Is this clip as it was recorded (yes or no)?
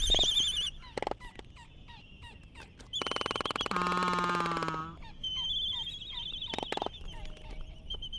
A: yes